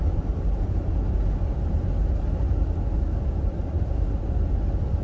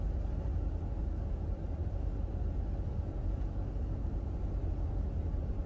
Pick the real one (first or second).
second